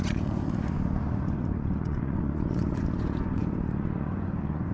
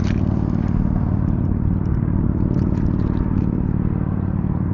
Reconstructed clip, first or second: first